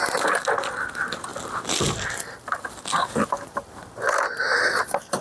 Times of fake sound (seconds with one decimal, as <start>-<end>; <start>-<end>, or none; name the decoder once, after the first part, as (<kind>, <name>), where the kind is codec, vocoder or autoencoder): none